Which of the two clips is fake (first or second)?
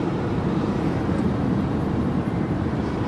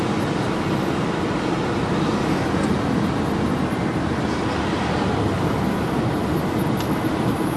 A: first